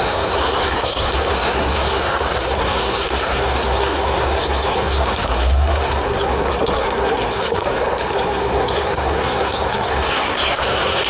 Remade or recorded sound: remade